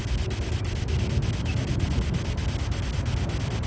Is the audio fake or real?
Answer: real